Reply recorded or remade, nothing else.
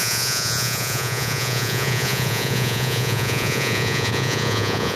remade